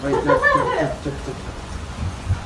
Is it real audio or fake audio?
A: fake